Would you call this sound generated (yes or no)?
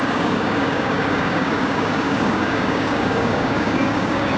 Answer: yes